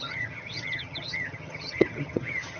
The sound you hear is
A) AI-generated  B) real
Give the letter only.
A